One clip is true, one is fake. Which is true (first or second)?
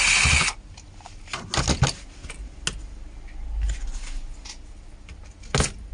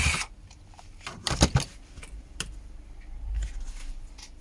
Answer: first